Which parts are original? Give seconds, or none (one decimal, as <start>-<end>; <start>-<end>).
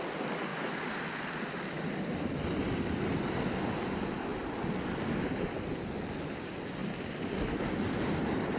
0.0-8.6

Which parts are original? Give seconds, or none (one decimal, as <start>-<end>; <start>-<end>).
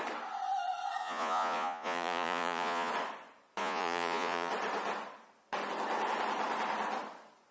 0.0-1.0; 2.9-3.6; 4.5-7.5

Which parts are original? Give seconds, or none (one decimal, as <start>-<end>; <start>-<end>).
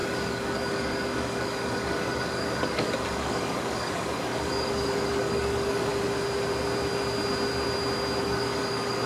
5.9-8.2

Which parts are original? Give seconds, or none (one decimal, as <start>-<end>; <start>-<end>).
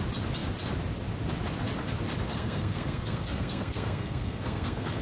0.0-2.3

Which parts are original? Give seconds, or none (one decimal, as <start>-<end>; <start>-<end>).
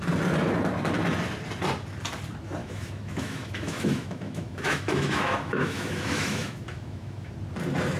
0.0-2.6; 7.3-8.0